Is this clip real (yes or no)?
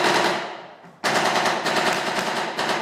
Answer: yes